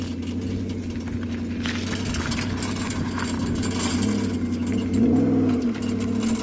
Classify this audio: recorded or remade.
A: recorded